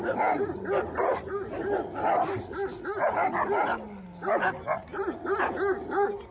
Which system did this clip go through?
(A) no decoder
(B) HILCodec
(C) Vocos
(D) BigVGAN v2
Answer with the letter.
A